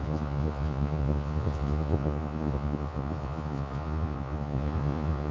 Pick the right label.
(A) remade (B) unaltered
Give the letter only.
A